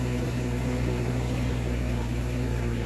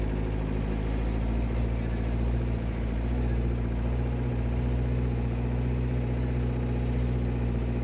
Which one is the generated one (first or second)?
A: first